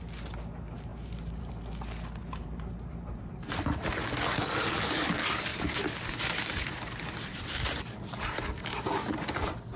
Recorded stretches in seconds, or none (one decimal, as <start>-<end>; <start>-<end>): 0.0-0.9; 1.5-2.2; 3.9-5.5; 9.3-9.8